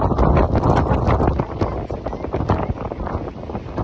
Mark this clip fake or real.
real